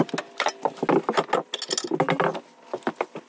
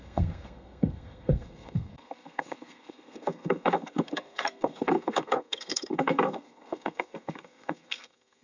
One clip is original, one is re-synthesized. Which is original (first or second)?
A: first